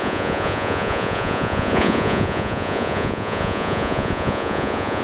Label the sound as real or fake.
fake